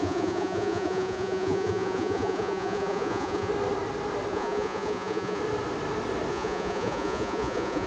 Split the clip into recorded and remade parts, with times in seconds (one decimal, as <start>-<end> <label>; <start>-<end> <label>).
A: 0.0-3.5 remade; 3.5-4.3 recorded; 4.3-5.4 remade; 5.4-6.3 recorded; 6.3-7.9 remade